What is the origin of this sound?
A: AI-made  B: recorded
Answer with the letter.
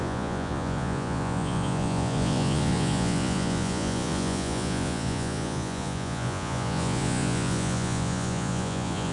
A